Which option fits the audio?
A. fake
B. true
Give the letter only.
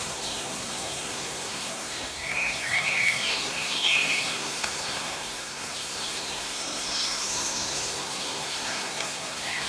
A